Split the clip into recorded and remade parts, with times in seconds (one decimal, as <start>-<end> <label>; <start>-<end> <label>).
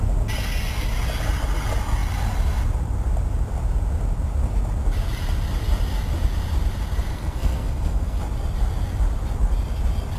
0.0-7.1 recorded; 7.1-8.2 remade; 8.2-10.2 recorded